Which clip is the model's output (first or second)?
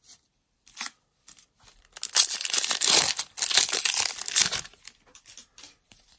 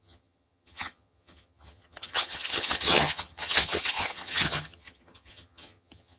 second